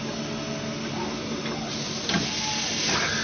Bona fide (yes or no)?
yes